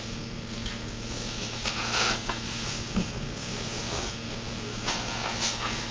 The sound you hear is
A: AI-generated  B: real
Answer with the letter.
A